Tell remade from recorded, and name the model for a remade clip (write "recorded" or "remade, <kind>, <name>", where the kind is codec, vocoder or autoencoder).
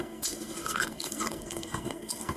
remade, codec, SNAC